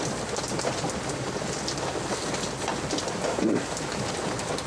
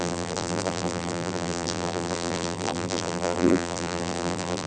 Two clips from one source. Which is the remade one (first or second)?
second